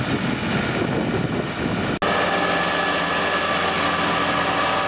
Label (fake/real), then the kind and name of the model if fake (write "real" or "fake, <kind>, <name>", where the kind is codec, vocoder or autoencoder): real